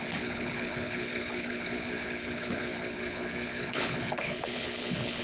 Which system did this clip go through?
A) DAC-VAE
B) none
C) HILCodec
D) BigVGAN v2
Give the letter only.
C